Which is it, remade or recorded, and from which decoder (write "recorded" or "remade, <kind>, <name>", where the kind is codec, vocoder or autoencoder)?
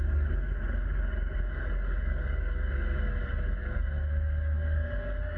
remade, codec, DAC